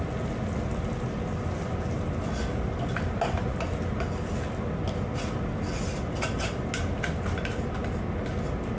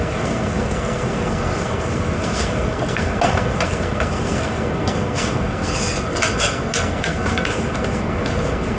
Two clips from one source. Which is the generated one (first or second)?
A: second